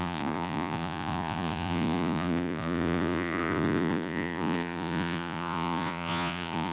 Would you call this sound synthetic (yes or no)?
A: yes